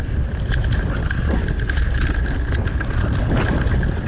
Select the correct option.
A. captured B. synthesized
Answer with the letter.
A